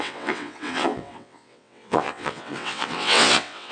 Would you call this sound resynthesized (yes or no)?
yes